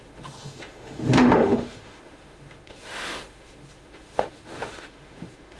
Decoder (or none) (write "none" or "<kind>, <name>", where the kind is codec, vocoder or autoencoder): autoencoder, DAC-VAE